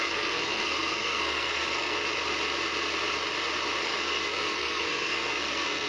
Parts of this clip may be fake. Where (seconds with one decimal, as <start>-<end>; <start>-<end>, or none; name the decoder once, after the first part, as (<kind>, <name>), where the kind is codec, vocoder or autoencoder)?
0.0-2.0 (codec, SNAC); 3.8-5.9